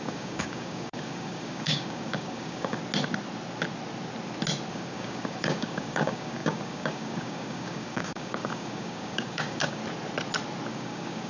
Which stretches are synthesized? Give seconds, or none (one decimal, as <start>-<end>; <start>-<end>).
0.0-2.8; 4.7-9.8; 10.7-11.3